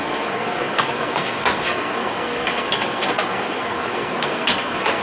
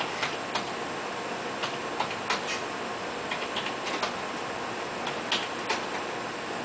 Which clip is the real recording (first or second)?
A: second